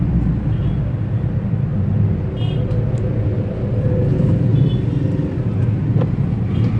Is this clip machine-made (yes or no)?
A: no